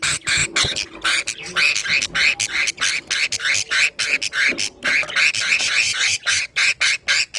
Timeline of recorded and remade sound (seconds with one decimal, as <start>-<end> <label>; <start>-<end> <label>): 0.0-5.5 recorded; 5.5-6.8 remade; 6.8-7.4 recorded